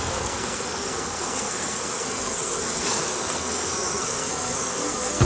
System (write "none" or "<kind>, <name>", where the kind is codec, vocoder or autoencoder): codec, SNAC